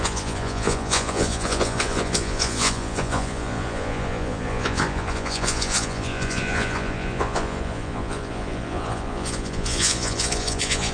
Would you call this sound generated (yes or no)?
yes